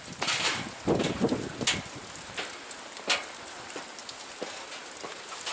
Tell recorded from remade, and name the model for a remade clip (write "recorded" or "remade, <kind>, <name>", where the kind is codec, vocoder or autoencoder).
recorded